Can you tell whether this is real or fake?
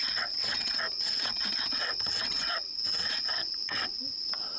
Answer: fake